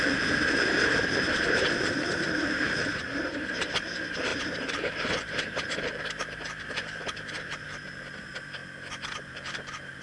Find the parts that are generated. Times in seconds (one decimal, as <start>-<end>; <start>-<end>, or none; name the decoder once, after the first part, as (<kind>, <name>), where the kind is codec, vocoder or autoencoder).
0.0-8.6 (vocoder, BigVGAN v2); 9.2-10.0